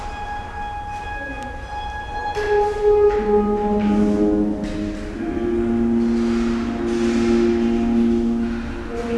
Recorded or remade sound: recorded